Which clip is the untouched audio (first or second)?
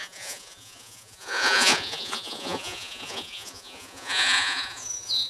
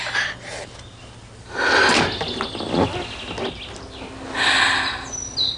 second